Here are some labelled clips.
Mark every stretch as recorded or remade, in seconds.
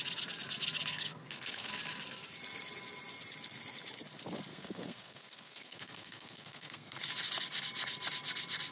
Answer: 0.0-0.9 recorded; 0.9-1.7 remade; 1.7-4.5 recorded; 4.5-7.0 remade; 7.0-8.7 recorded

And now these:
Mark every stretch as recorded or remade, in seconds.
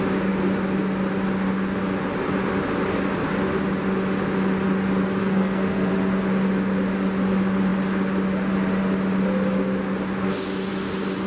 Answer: 0.0-5.2 recorded; 5.2-5.9 remade; 5.9-11.3 recorded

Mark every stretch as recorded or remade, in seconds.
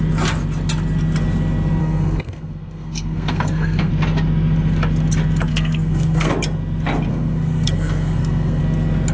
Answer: 0.0-1.8 recorded; 1.8-3.9 remade; 3.9-5.5 recorded; 5.5-6.3 remade; 6.3-7.1 recorded; 7.1-8.6 remade; 8.6-9.1 recorded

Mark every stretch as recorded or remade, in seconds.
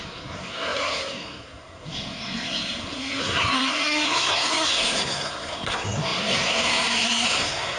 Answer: 0.0-7.8 remade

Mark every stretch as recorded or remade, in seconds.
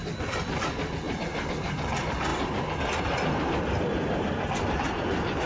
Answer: 0.0-5.5 recorded